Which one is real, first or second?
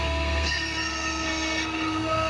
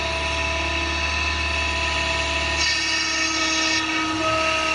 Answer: second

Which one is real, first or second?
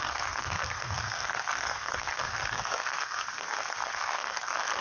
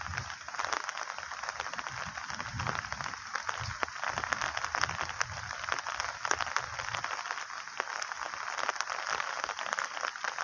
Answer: second